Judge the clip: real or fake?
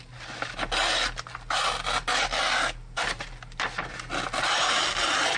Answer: fake